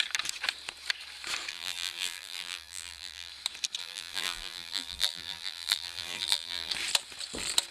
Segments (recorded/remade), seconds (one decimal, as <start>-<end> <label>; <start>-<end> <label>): 0.0-1.5 recorded; 1.5-3.3 remade; 3.3-3.8 recorded; 3.8-6.7 remade; 6.7-7.7 recorded